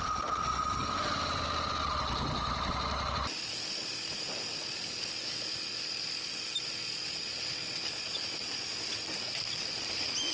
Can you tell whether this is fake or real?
real